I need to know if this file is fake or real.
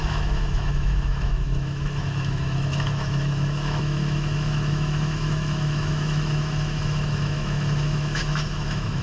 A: fake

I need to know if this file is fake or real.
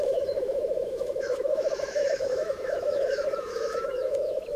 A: fake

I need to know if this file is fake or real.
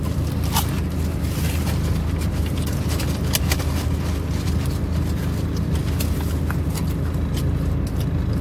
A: real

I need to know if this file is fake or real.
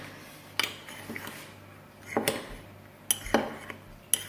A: real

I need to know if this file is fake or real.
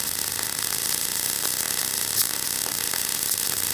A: real